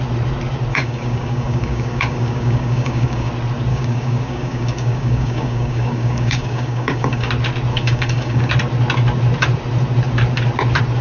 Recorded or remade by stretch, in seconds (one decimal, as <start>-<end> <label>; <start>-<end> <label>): 0.0-0.7 recorded; 0.7-3.3 remade; 3.3-3.7 recorded; 3.7-7.3 remade; 7.3-7.7 recorded; 7.7-8.5 remade; 8.5-11.0 recorded